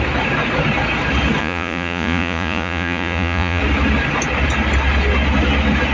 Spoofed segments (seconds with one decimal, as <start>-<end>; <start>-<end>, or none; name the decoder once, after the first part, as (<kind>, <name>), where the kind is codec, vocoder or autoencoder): 1.4-3.6 (vocoder, Vocos)